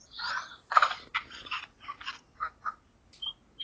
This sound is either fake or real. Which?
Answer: real